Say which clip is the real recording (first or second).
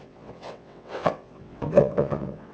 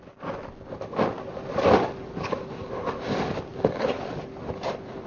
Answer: second